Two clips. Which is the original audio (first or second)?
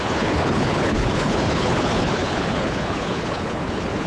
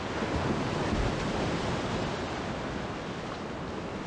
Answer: second